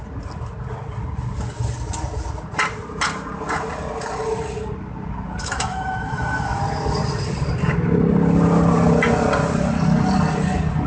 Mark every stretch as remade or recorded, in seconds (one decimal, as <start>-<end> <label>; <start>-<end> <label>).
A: 0.0-5.4 recorded; 5.4-6.6 remade; 6.6-10.9 recorded